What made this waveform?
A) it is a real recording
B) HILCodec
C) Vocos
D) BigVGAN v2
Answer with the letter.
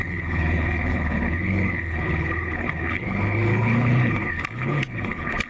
B